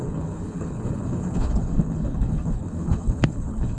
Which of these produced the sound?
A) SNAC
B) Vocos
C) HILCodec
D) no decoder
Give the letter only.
C